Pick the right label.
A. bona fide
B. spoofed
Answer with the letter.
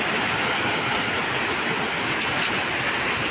A